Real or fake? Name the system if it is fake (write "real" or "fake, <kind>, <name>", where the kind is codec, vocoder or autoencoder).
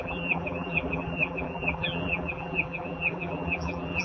fake, vocoder, BigVGAN v2